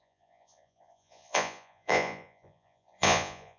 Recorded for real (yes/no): no